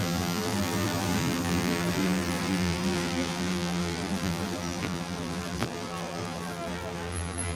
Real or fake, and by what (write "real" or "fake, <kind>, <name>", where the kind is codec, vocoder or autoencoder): fake, vocoder, BigVGAN v2